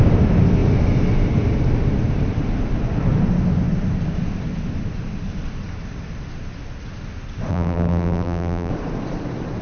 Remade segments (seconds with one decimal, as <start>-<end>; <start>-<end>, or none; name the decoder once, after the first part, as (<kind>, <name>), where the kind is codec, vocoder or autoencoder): 7.5-8.7 (vocoder, BigVGAN v2)